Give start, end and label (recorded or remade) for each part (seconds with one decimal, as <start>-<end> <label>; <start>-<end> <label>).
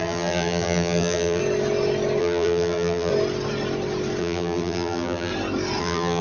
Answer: 0.0-1.4 remade; 1.4-2.2 recorded; 2.2-3.1 remade; 3.1-4.2 recorded; 4.2-5.3 remade; 5.3-5.8 recorded; 5.8-6.2 remade